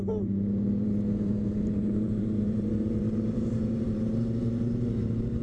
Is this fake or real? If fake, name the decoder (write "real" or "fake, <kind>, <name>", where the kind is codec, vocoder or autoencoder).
fake, vocoder, BigVGAN v2